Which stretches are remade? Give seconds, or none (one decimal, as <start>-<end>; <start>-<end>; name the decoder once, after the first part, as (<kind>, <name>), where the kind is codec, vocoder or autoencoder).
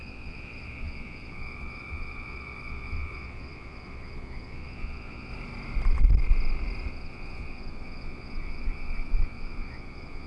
0.0-5.3 (vocoder, Vocos); 6.9-10.3